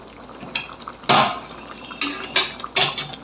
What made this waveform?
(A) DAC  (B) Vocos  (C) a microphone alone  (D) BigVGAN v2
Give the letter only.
C